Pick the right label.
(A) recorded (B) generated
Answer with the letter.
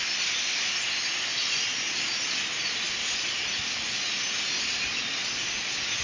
A